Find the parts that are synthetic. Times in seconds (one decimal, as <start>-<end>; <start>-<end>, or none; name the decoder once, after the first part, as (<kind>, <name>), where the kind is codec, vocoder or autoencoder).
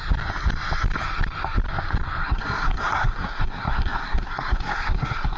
2.2-5.4 (codec, SNAC)